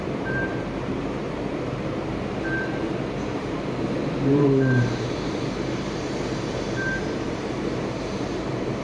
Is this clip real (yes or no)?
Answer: no